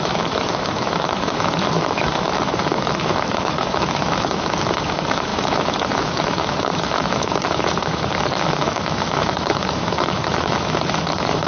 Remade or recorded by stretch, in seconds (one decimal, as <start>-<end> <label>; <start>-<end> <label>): 0.0-11.5 remade